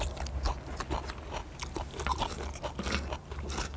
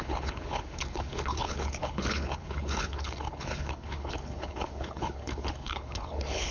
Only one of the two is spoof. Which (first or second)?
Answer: second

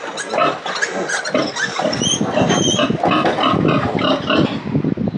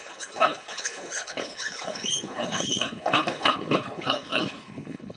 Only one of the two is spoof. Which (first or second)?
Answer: second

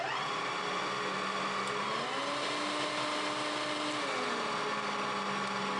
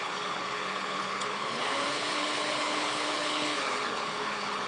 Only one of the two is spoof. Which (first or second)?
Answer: second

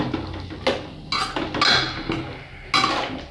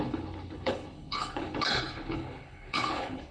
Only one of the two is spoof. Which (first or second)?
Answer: second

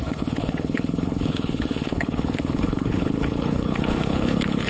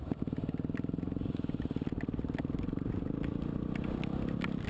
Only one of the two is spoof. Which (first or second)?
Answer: first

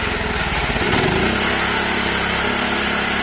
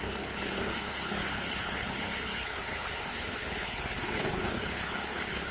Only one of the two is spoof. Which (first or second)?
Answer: second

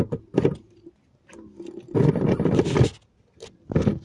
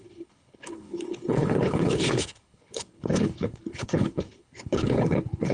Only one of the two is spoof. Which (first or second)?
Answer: second